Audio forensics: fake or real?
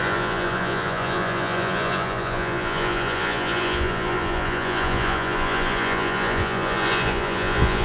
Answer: fake